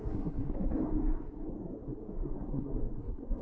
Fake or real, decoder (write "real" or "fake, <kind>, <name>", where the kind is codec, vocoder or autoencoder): fake, codec, SNAC